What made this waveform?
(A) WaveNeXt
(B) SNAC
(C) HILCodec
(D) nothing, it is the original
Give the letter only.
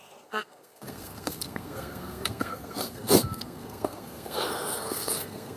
B